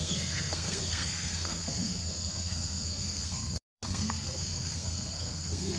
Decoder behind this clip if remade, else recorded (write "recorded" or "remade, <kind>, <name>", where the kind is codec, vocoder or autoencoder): remade, codec, SNAC